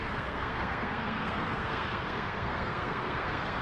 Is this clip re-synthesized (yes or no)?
yes